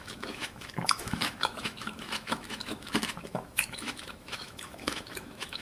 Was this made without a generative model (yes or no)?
no